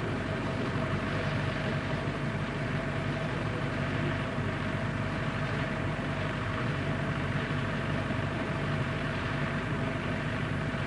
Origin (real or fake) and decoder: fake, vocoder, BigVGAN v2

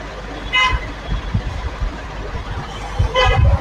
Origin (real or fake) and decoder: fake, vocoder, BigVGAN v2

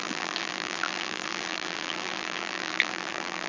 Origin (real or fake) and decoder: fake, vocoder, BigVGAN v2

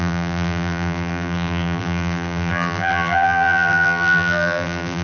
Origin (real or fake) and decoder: fake, vocoder, BigVGAN v2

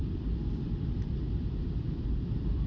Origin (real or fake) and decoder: fake, vocoder, BigVGAN v2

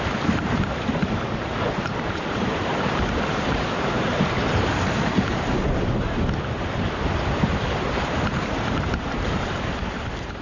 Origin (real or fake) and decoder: fake, vocoder, BigVGAN v2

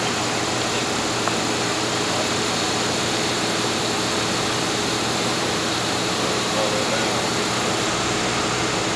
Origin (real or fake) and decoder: fake, vocoder, BigVGAN v2